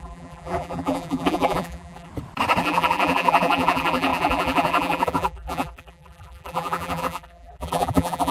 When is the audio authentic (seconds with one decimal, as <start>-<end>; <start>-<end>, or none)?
2.1-2.6